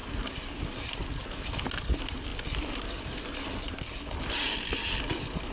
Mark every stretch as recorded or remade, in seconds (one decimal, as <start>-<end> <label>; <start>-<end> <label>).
0.0-0.5 recorded; 0.5-1.0 remade; 1.0-1.9 recorded; 1.9-5.5 remade